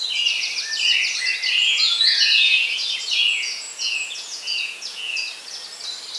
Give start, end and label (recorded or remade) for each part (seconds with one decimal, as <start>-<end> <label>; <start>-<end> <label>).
0.0-1.6 recorded; 1.6-5.3 remade; 5.3-6.2 recorded